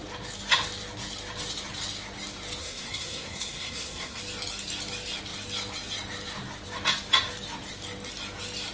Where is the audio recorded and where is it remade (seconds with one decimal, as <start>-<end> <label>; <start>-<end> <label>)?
0.0-2.6 recorded; 2.6-4.2 remade; 4.2-8.7 recorded